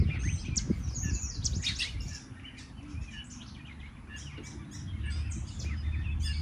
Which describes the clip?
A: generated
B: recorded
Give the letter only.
B